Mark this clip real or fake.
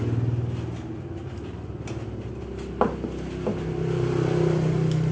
real